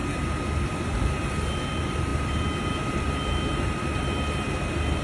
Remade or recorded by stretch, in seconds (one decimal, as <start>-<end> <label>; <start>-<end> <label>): 0.0-0.7 recorded; 0.7-5.0 remade